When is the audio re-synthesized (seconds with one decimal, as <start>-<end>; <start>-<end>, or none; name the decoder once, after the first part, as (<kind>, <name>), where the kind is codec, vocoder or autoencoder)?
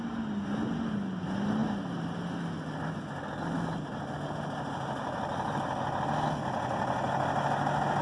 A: none